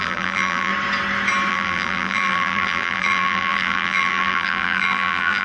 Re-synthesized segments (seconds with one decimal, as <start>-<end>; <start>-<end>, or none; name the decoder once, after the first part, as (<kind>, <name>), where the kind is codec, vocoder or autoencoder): 0.0-0.7 (vocoder, BigVGAN v2); 1.5-5.4